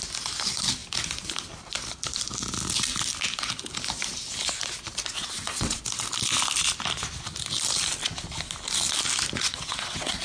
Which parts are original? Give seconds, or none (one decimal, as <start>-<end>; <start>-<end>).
0.0-5.2; 5.8-9.4